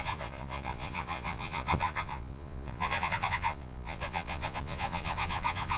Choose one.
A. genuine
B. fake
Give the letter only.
B